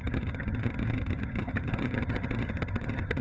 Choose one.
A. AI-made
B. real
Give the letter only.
A